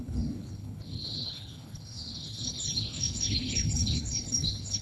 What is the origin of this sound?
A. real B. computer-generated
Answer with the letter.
B